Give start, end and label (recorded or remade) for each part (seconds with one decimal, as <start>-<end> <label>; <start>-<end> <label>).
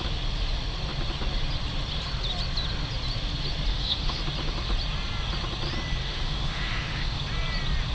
0.0-3.7 recorded; 3.7-4.2 remade; 4.2-6.0 recorded; 6.0-7.2 remade; 7.2-7.9 recorded